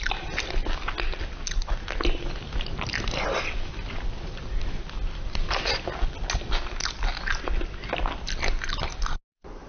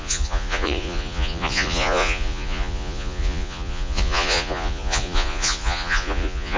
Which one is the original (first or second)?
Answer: first